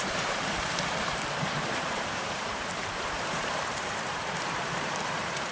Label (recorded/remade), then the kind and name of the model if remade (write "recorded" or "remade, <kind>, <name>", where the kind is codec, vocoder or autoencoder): remade, vocoder, BigVGAN v2